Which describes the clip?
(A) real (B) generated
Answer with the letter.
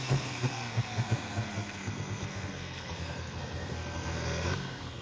B